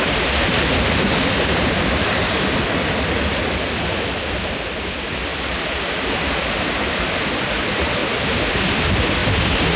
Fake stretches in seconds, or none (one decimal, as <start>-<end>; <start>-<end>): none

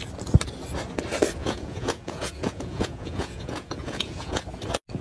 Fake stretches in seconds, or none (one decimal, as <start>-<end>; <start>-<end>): 1.4-4.4

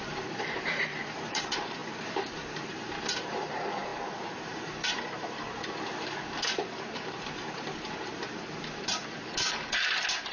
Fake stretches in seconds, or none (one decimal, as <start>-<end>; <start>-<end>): 0.0-10.3